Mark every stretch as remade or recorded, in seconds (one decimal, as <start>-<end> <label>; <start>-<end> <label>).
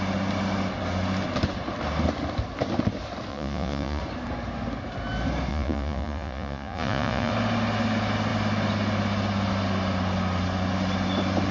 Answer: 0.0-3.3 recorded; 3.3-4.0 remade; 4.0-5.5 recorded; 5.5-7.3 remade; 7.3-11.5 recorded